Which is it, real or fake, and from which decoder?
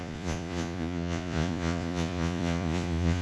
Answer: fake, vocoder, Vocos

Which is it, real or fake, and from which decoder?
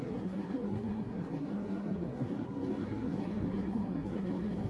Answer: fake, codec, SNAC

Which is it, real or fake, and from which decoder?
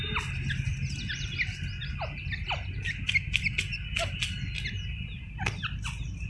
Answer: real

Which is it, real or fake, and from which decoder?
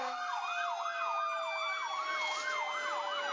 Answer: real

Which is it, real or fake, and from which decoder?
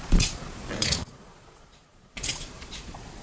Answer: fake, vocoder, Vocos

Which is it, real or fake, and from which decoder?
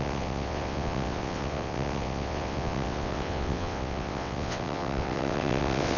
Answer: fake, vocoder, WaveNeXt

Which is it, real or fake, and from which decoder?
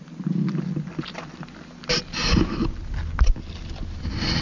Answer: real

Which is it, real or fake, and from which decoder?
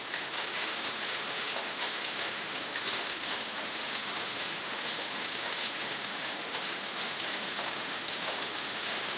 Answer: fake, autoencoder, DAC-VAE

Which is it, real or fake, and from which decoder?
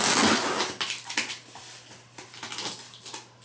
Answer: real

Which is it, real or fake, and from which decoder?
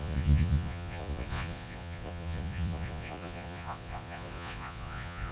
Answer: fake, vocoder, Vocos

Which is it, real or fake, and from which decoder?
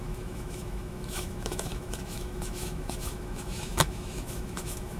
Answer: fake, autoencoder, DAC-VAE